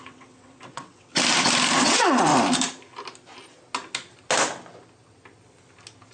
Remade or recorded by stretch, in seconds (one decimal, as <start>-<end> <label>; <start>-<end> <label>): 0.0-1.1 remade; 1.1-1.8 recorded; 1.8-2.3 remade; 2.3-6.1 recorded